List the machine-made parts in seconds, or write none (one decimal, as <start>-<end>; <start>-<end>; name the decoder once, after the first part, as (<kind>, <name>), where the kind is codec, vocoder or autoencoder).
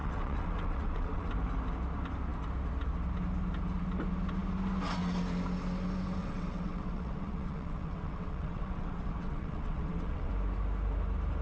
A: 0.0-1.3 (vocoder, WaveNeXt); 6.2-10.3